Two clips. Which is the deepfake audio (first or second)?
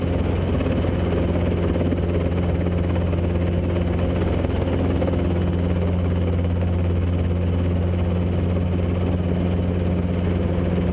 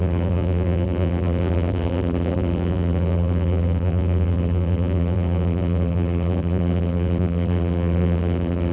second